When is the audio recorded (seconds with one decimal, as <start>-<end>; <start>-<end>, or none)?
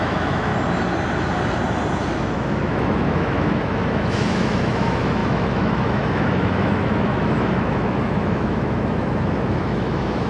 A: 0.5-2.1